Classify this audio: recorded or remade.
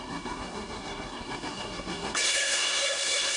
remade